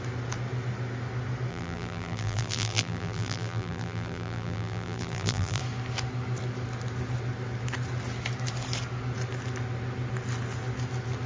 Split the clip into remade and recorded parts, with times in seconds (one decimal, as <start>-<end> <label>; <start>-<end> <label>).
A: 0.0-1.5 recorded; 1.5-5.6 remade; 5.6-11.3 recorded